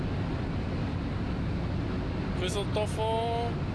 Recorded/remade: recorded